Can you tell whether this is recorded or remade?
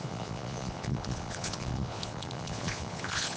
remade